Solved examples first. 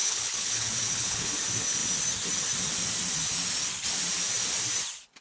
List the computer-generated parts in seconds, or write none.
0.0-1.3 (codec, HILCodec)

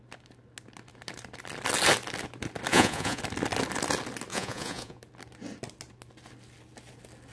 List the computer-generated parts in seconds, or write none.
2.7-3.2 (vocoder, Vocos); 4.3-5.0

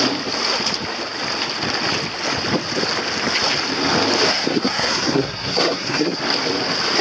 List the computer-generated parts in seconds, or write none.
4.3-6.2 (codec, SNAC)